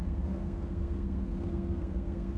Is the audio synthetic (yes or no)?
yes